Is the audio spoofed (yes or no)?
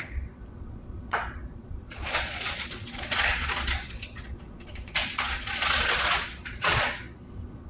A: yes